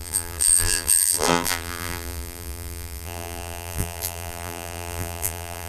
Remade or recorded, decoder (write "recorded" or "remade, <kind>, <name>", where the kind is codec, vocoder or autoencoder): remade, vocoder, BigVGAN v2